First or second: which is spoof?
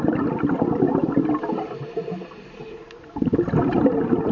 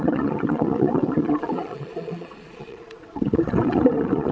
second